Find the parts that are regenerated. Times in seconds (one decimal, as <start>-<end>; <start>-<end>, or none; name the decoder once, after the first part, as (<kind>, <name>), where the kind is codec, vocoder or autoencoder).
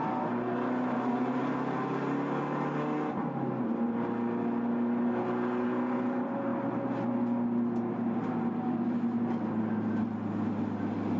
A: none